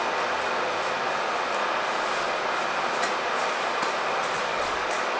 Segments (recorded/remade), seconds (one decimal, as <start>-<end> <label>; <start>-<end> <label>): 0.0-4.5 recorded; 4.5-5.2 remade

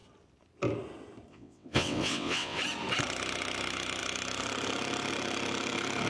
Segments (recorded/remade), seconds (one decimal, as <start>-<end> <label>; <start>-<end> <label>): 0.0-1.3 recorded; 1.3-2.6 remade; 2.6-6.1 recorded

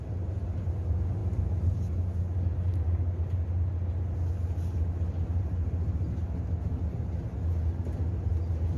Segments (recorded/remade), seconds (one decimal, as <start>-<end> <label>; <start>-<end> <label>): 0.0-8.8 recorded

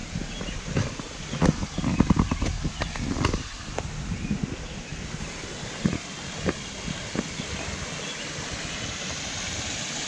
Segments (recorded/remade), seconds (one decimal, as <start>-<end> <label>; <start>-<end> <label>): 0.0-10.1 recorded

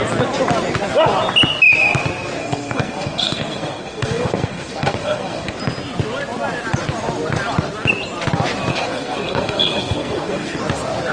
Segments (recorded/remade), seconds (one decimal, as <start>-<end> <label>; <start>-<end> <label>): 0.0-2.4 recorded; 2.4-5.6 remade; 5.6-8.7 recorded; 8.7-10.6 remade; 10.6-11.1 recorded